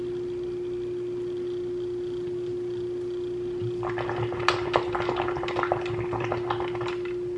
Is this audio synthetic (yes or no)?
no